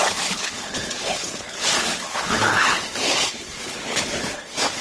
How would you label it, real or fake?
fake